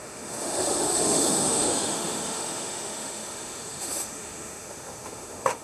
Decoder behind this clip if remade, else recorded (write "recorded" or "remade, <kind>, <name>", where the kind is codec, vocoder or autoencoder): remade, autoencoder, DAC-VAE